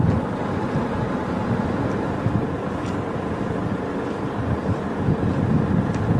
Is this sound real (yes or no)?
yes